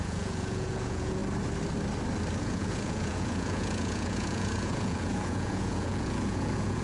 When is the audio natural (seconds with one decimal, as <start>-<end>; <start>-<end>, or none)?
1.2-2.4